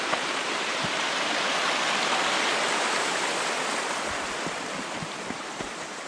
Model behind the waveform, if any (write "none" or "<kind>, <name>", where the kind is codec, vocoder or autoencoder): none